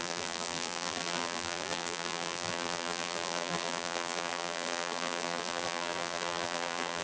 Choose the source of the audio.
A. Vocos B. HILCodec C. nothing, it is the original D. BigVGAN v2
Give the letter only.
D